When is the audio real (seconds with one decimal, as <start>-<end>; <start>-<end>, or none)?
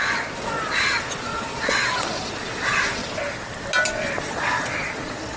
3.0-4.2